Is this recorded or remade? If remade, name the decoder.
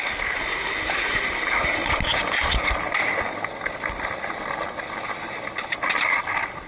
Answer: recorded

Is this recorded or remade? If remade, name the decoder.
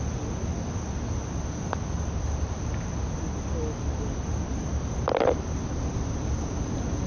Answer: recorded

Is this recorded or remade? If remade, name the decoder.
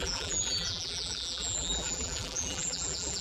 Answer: remade, vocoder, BigVGAN v2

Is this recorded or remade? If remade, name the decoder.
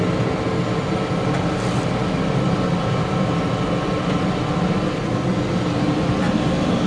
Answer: recorded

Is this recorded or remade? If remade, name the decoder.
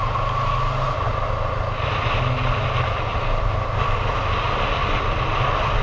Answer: recorded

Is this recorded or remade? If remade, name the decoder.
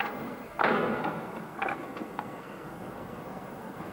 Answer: remade, codec, SNAC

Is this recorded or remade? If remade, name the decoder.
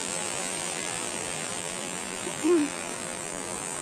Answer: remade, vocoder, BigVGAN v2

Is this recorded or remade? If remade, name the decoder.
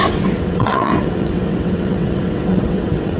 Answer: remade, vocoder, WaveNeXt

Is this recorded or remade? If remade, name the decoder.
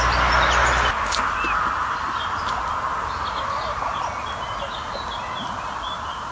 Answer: recorded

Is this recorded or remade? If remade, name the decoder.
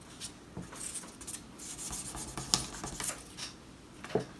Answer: recorded